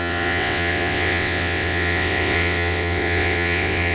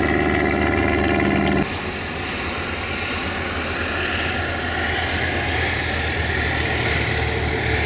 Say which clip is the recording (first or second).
second